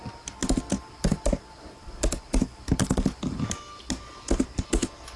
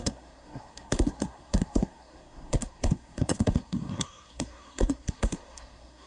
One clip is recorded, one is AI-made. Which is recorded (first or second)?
first